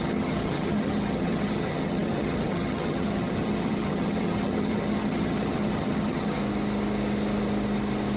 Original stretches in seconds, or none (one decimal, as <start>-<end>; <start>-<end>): 6.4-8.2